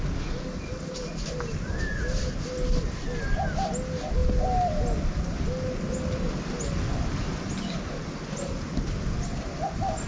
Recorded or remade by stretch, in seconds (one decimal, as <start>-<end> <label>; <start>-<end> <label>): 0.0-10.1 recorded